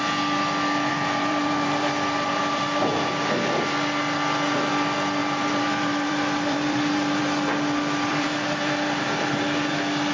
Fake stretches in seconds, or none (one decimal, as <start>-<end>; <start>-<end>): 0.9-2.8; 5.2-7.2; 8.1-9.0